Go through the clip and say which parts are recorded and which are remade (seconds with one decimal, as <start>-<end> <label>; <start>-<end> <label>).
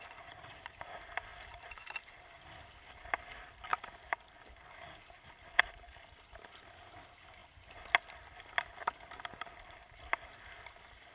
0.0-11.1 recorded